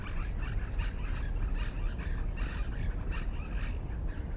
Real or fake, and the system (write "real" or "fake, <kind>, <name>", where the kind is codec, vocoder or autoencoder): real